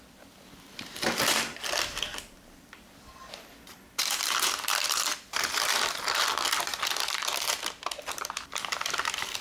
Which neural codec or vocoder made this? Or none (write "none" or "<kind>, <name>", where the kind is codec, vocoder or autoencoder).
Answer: vocoder, BigVGAN v2